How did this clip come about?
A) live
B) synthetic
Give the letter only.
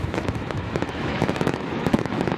B